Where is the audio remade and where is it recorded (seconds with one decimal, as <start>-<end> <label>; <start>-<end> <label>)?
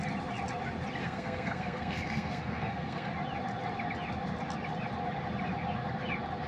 0.0-1.0 recorded; 1.0-3.1 remade; 3.1-6.5 recorded